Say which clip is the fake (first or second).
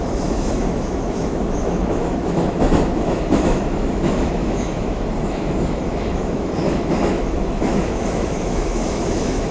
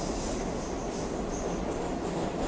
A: first